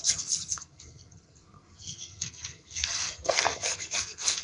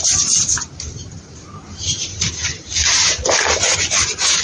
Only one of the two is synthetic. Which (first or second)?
first